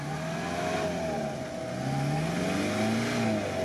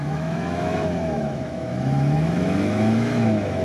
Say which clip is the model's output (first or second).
second